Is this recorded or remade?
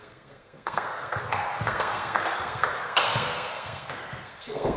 remade